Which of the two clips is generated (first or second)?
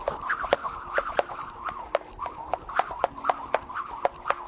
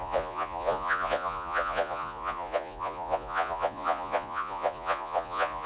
second